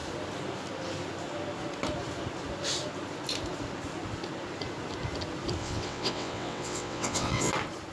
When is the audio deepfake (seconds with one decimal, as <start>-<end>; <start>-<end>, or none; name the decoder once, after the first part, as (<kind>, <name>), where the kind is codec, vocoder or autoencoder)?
5.6-7.5 (vocoder, WaveNeXt)